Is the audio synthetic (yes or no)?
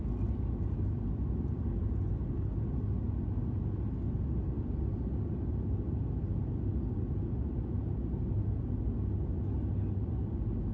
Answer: no